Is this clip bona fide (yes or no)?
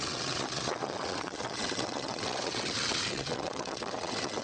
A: no